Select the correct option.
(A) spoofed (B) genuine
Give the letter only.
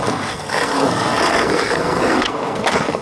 A